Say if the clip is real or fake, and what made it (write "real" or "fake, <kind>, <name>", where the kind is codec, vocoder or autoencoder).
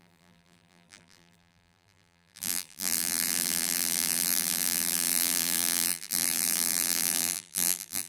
fake, vocoder, BigVGAN v2